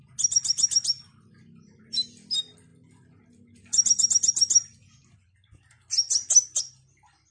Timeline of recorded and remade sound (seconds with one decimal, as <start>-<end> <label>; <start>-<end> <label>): 0.0-7.3 recorded